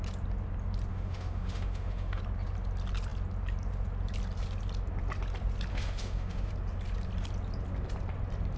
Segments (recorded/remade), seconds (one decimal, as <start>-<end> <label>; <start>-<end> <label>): 0.0-0.9 recorded; 0.9-2.2 remade; 2.2-5.7 recorded; 5.7-6.5 remade; 6.5-8.6 recorded